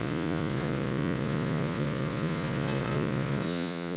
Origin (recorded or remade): remade